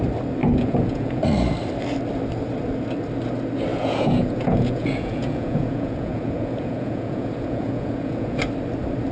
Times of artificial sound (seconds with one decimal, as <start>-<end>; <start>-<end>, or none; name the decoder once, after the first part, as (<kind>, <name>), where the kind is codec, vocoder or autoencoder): 0.4-1.2 (vocoder, Vocos); 3.7-8.4